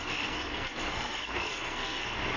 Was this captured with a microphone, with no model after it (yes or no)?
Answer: no